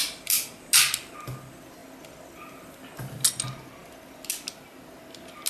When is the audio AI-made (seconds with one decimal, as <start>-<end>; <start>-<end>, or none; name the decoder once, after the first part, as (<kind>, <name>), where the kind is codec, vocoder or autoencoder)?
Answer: none